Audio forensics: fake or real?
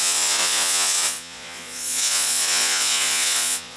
fake